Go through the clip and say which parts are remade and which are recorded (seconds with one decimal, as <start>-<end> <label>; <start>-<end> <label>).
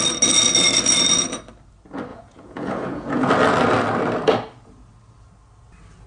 0.0-2.1 recorded; 2.1-3.3 remade; 3.3-6.1 recorded